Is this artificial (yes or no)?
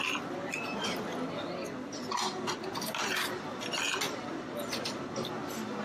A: no